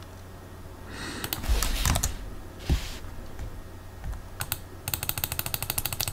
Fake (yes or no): no